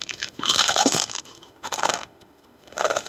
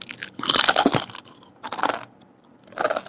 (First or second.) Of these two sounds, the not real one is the first